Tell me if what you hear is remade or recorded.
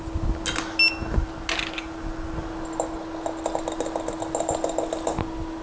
recorded